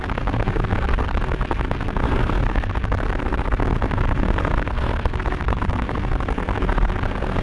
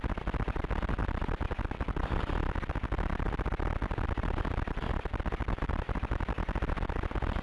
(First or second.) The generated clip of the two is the first